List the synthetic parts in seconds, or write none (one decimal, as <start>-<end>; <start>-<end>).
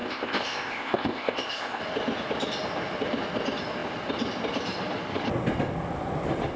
0.0-1.8